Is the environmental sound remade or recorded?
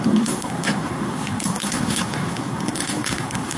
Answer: remade